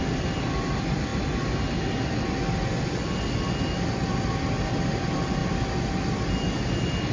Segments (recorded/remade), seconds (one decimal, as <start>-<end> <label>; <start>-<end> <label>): 0.0-1.1 remade; 1.1-4.5 recorded; 4.5-5.4 remade; 5.4-7.1 recorded